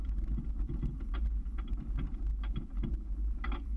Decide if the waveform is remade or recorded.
recorded